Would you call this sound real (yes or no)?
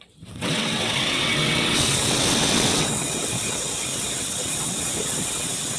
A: no